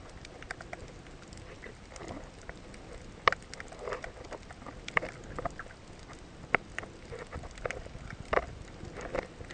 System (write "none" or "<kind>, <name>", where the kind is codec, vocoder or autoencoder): none